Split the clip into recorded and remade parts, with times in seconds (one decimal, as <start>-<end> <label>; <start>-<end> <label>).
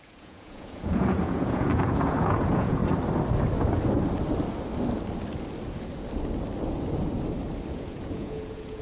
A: 0.0-2.8 remade; 2.8-7.7 recorded; 7.7-8.8 remade